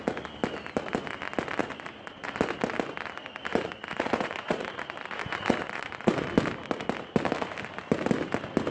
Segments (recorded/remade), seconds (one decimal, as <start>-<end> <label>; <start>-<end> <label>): 0.0-1.6 recorded; 1.6-2.3 remade; 2.3-3.5 recorded; 3.5-6.3 remade; 6.3-8.7 recorded